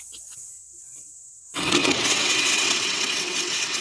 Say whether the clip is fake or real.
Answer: fake